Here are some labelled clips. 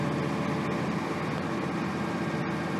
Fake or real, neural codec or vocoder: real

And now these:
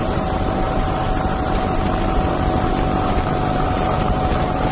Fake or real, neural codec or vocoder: fake, vocoder, BigVGAN v2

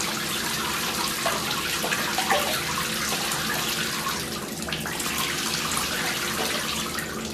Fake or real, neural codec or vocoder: real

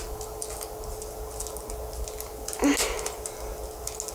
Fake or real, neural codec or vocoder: real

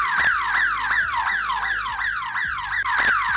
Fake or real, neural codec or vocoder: fake, vocoder, BigVGAN v2